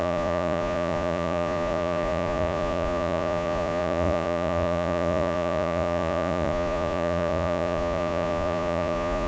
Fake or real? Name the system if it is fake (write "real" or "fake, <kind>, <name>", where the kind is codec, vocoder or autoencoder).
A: fake, vocoder, Vocos